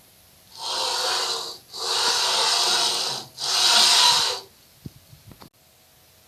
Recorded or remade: recorded